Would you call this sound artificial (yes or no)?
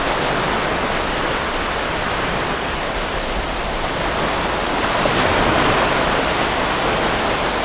no